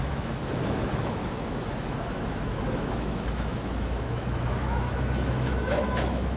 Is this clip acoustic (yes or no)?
no